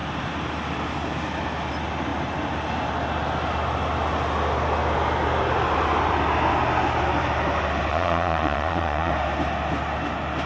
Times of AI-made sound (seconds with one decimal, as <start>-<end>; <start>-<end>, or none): 7.9-9.1